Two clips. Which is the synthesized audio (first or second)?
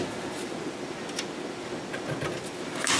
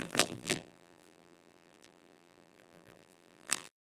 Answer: second